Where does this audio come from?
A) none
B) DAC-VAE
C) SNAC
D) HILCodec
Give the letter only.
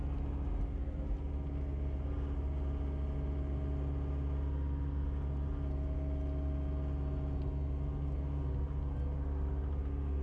A